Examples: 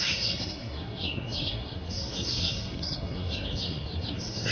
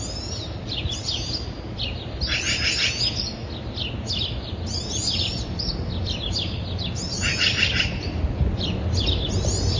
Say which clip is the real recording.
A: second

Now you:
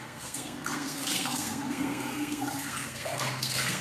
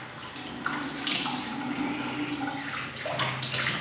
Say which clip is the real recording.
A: second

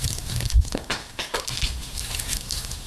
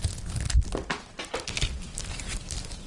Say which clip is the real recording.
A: second